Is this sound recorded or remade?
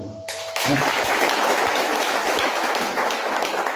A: remade